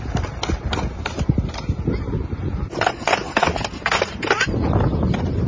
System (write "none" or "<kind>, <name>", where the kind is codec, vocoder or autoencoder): none